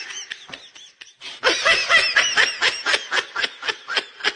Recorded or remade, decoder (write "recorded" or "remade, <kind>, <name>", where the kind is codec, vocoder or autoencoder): recorded